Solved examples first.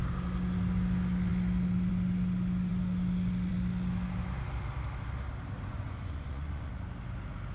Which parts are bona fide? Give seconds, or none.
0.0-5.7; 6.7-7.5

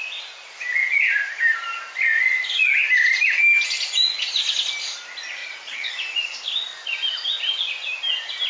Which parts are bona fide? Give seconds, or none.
0.0-0.8; 1.4-2.1; 2.9-5.4; 5.9-8.5

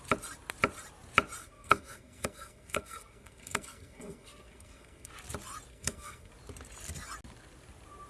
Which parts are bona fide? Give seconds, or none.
0.0-1.4; 5.1-5.7; 6.3-8.1

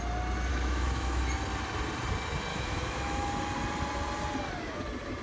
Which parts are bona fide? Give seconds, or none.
0.0-0.5; 1.2-2.5; 3.3-5.2

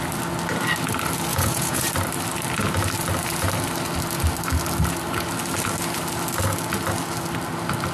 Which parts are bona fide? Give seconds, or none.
0.0-1.3; 1.9-7.9

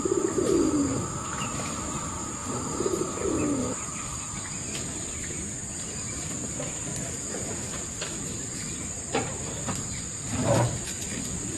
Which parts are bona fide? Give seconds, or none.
2.4-2.9; 3.9-5.1; 6.9-8.7

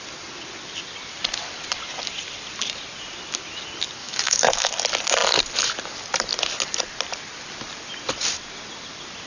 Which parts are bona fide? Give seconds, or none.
0.0-4.0; 4.7-9.3